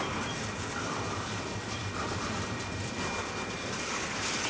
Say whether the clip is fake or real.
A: fake